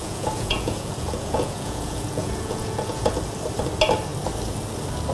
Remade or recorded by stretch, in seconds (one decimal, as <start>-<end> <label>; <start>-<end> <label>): 0.0-3.1 remade; 3.1-5.1 recorded